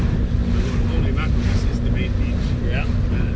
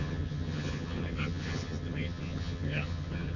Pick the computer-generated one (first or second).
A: second